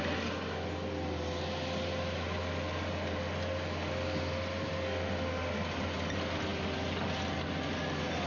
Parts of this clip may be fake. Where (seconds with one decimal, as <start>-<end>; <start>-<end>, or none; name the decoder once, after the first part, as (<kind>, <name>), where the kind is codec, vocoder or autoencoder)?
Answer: none